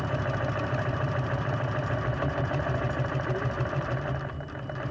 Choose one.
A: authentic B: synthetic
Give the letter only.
B